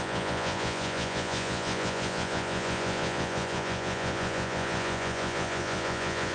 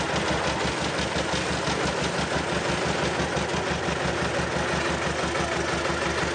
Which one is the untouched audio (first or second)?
second